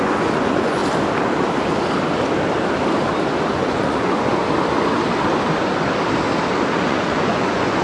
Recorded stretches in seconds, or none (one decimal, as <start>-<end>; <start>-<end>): 0.8-3.5; 4.4-6.7